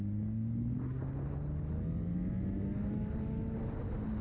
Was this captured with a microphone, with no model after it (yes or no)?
yes